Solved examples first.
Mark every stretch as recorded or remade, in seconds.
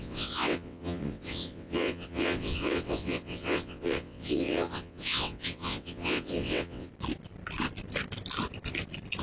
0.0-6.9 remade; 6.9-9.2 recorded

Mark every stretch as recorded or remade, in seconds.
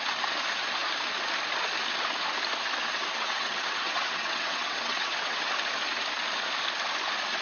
0.0-2.8 recorded; 2.8-5.5 remade; 5.5-7.4 recorded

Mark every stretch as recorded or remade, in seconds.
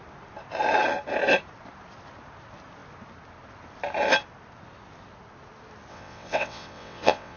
0.0-5.9 recorded; 5.9-7.4 remade